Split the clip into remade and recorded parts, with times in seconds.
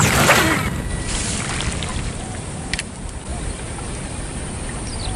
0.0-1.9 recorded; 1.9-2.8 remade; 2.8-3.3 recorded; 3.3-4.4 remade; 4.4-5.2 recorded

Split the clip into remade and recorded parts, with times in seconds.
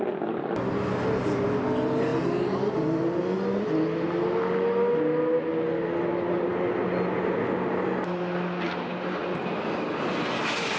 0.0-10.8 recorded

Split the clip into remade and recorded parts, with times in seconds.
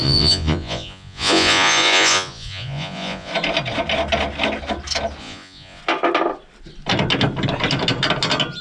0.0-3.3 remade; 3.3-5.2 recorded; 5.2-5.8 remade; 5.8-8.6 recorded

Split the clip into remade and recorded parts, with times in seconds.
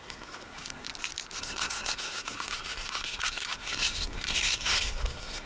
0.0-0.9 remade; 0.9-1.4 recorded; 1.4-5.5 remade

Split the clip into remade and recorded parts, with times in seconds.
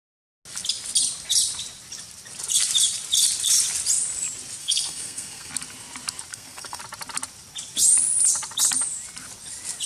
0.0-4.6 recorded; 4.6-5.5 remade; 5.5-6.3 recorded; 6.3-6.8 remade; 6.8-9.9 recorded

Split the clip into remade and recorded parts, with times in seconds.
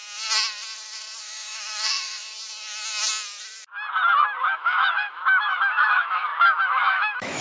0.0-1.2 recorded; 1.2-2.3 remade; 2.3-4.4 recorded; 4.4-7.4 remade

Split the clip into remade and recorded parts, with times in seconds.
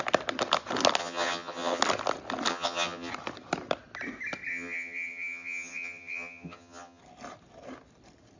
0.0-1.0 recorded; 1.0-1.8 remade; 1.8-2.5 recorded; 2.5-3.1 remade; 3.1-4.5 recorded; 4.5-7.0 remade; 7.0-8.4 recorded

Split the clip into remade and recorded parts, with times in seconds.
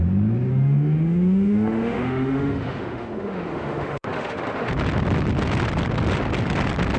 0.0-0.5 recorded; 0.5-4.7 remade; 4.7-7.0 recorded